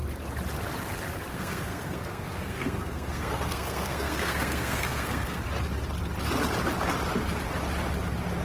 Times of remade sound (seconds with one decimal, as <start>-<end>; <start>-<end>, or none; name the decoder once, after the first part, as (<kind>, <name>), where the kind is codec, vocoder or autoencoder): 1.3-5.4 (codec, SNAC)

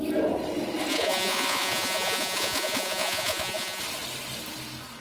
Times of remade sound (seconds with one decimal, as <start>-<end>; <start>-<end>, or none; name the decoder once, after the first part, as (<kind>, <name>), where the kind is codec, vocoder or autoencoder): 0.9-3.8 (vocoder, Vocos)